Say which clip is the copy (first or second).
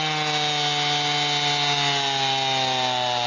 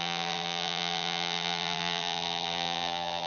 second